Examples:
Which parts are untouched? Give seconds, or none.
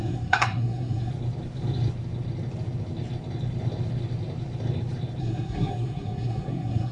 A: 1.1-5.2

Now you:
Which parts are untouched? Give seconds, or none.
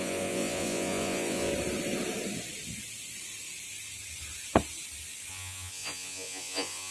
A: 1.5-5.3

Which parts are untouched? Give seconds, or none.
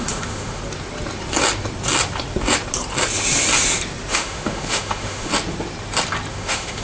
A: 0.6-4.1; 5.3-6.3